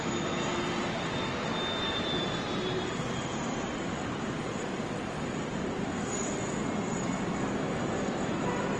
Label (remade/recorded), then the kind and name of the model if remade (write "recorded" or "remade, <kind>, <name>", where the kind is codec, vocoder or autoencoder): recorded